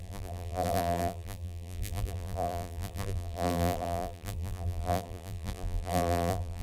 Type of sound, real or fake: fake